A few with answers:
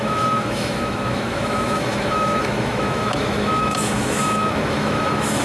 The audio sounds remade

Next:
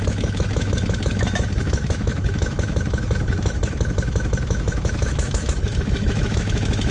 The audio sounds remade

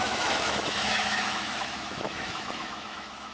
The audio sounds remade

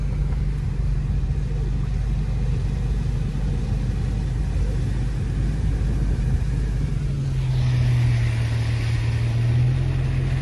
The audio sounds recorded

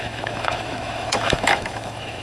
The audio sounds remade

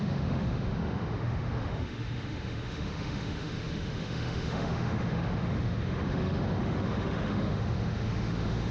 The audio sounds remade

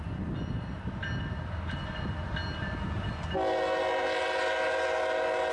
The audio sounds recorded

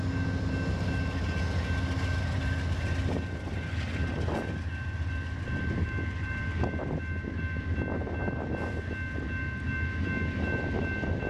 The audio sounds recorded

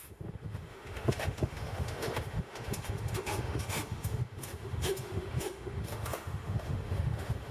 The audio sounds remade